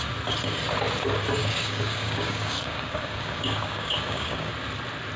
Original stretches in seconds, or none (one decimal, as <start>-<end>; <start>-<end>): 0.0-1.4; 4.5-5.2